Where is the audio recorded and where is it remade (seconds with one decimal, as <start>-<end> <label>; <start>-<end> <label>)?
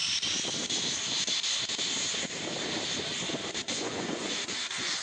0.0-3.6 recorded; 3.6-5.0 remade